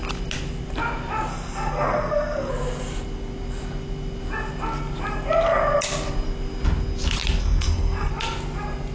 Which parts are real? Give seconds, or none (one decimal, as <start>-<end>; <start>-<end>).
0.0-1.3; 2.5-7.4; 8.1-8.9